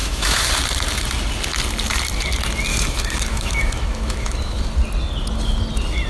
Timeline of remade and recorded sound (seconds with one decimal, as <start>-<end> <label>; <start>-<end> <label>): 0.0-0.5 remade; 0.5-2.7 recorded; 2.7-4.6 remade; 4.6-6.1 recorded